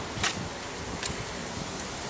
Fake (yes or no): yes